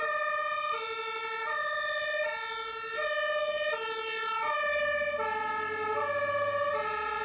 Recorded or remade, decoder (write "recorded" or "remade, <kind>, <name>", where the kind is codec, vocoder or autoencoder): recorded